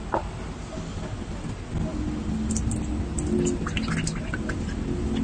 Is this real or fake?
real